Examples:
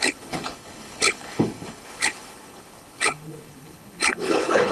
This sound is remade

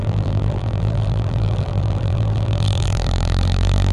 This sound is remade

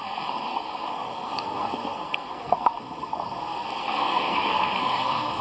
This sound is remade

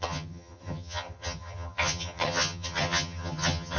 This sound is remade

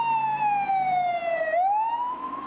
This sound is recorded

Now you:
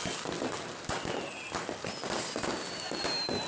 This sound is recorded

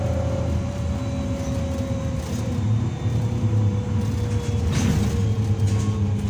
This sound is recorded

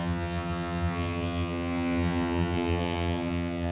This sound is remade